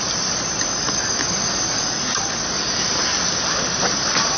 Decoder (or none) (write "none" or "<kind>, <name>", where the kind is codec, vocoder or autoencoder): vocoder, BigVGAN v2